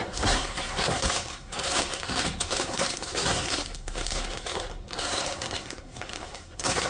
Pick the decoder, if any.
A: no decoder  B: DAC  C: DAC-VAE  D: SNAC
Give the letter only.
D